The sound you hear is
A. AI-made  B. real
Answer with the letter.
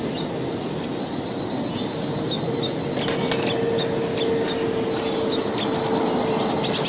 B